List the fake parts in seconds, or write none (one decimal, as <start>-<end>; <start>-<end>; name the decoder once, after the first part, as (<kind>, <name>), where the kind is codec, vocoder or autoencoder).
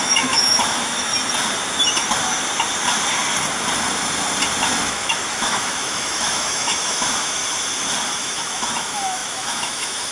0.0-1.1 (autoencoder, DAC-VAE); 4.9-7.4; 8.2-10.1